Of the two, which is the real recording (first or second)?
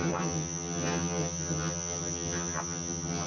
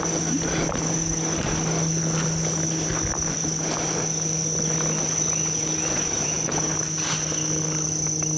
second